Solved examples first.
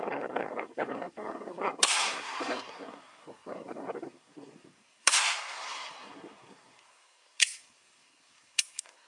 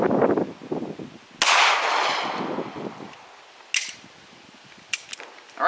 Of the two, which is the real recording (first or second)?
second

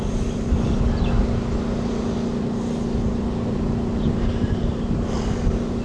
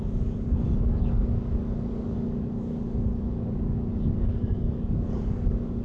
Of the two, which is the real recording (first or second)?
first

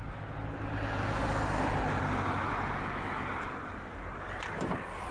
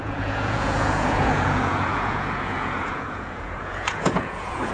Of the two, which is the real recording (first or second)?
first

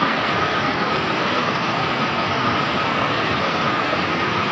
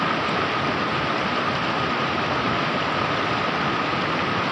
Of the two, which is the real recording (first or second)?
second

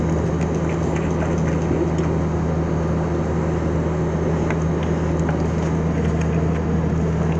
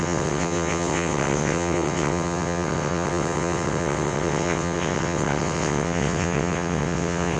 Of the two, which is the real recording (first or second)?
first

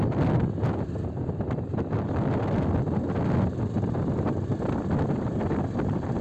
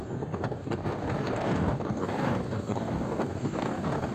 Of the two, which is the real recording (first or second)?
first